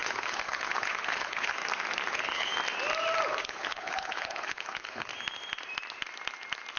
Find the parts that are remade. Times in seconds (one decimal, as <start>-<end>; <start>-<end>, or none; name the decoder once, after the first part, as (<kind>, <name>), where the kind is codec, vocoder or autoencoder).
0.0-1.6 (codec, HILCodec); 2.1-2.5; 3.4-5.1